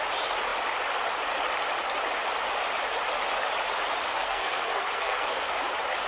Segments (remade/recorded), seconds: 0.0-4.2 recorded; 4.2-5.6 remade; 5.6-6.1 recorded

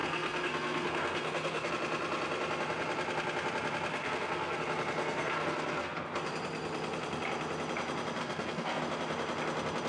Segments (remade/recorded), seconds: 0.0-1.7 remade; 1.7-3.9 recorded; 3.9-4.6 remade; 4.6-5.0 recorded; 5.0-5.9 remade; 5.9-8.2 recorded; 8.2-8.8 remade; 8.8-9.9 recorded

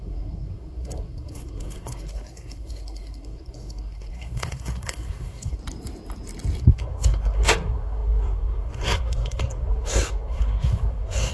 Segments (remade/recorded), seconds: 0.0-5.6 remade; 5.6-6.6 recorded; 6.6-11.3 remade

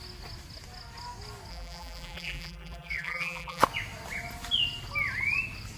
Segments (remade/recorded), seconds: 0.0-1.5 recorded; 1.5-3.6 remade; 3.6-5.8 recorded

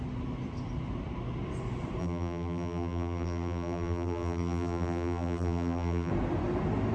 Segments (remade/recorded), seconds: 0.0-2.0 recorded; 2.0-6.1 remade; 6.1-6.9 recorded

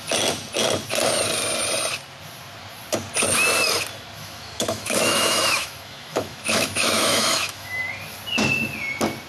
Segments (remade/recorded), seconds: 0.0-4.2 recorded; 4.2-7.8 remade; 7.8-9.3 recorded

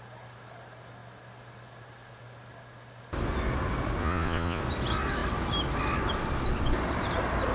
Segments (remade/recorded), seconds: 0.0-4.0 recorded; 4.0-4.6 remade; 4.6-7.5 recorded